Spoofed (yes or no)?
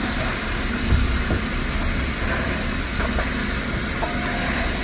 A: no